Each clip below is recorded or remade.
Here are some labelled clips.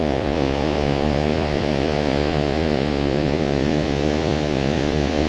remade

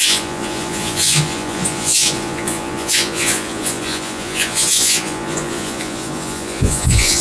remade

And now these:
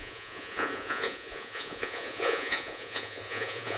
remade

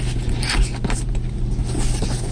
recorded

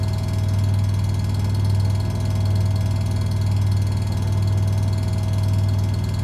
recorded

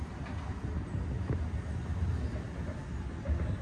recorded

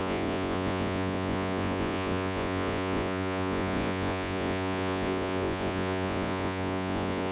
remade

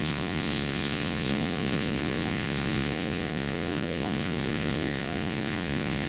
remade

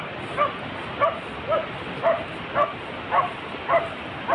recorded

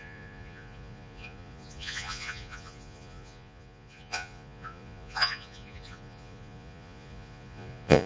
remade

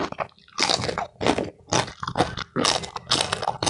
recorded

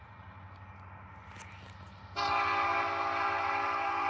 recorded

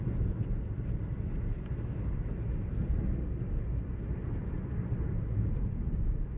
recorded